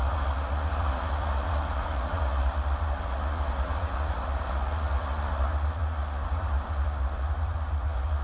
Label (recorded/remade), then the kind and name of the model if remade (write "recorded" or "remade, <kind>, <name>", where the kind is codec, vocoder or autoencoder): remade, vocoder, Vocos